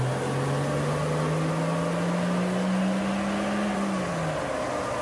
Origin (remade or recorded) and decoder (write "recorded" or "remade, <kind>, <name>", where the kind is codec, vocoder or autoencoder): recorded